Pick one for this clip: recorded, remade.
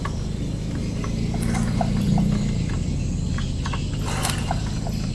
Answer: recorded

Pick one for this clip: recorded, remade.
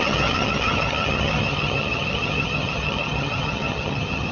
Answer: remade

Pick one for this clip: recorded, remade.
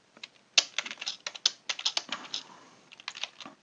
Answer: recorded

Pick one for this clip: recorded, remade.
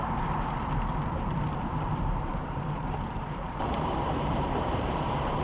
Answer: remade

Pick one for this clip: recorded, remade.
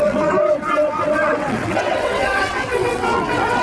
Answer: remade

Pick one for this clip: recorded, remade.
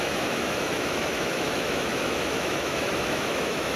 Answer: remade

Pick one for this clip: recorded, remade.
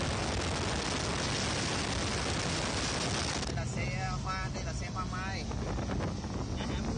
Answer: recorded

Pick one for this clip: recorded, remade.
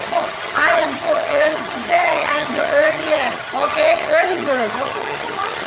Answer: remade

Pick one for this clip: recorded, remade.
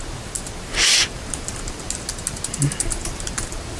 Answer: recorded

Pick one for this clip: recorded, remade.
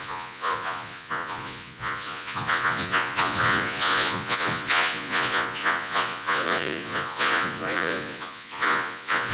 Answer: remade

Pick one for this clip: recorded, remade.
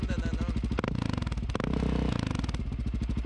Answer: recorded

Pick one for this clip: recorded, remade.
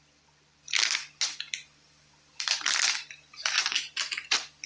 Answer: recorded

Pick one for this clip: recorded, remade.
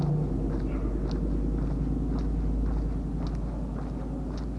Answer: recorded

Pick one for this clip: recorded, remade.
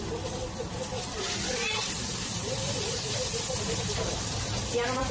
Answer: remade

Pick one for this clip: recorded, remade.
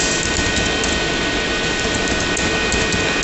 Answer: recorded